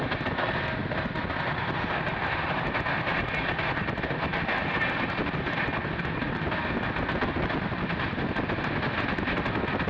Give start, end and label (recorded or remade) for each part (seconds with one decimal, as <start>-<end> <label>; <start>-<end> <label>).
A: 0.0-9.9 recorded